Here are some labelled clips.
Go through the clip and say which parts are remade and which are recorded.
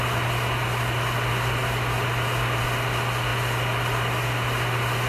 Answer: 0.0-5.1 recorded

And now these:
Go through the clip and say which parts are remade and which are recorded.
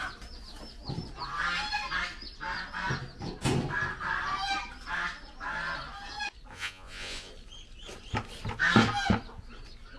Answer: 0.0-6.5 recorded; 6.5-7.3 remade; 7.3-10.0 recorded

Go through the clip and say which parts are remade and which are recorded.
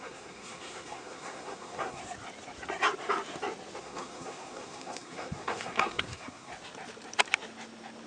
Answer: 0.0-2.0 remade; 2.0-3.8 recorded; 3.8-6.5 remade; 6.5-8.1 recorded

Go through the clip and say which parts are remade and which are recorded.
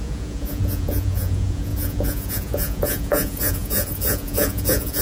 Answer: 0.0-5.0 remade